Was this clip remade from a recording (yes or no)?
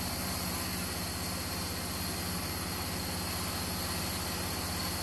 no